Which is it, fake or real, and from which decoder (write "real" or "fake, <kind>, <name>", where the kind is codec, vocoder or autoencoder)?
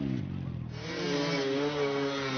real